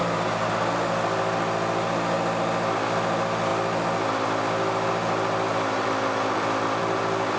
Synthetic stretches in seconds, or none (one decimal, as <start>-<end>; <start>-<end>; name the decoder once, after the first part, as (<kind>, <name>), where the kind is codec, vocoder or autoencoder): 0.0-0.5 (vocoder, BigVGAN v2)